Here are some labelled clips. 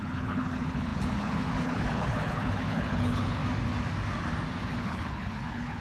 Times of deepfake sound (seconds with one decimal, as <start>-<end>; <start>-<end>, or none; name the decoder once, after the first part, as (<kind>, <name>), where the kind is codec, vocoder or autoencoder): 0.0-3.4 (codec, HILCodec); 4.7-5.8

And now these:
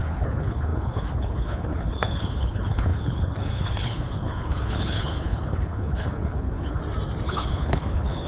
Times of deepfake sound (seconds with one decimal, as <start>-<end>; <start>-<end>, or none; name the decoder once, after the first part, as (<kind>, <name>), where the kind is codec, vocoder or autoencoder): 0.0-6.8 (codec, HILCodec); 7.3-8.3

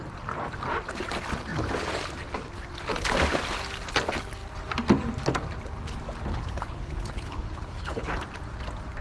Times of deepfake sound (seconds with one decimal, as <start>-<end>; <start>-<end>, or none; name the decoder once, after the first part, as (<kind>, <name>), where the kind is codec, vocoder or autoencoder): 6.3-8.1 (codec, HILCodec)

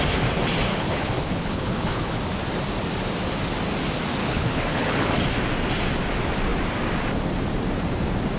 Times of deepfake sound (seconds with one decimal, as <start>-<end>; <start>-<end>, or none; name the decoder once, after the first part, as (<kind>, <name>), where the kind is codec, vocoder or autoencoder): 0.7-2.2 (codec, HILCodec); 4.2-5.2

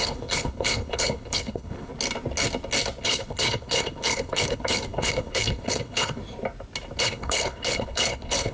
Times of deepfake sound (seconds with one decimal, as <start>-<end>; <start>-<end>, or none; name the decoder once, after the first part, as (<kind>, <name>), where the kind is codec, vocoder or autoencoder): 0.0-1.9 (codec, HILCodec); 3.0-6.2; 7.0-8.5